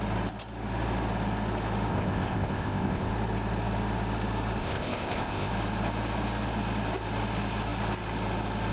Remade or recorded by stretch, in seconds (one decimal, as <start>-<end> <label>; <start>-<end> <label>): 0.0-1.9 recorded; 1.9-3.1 remade; 3.1-4.6 recorded; 4.6-5.5 remade; 5.5-8.7 recorded